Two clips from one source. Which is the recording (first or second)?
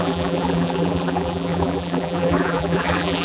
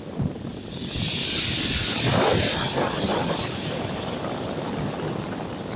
second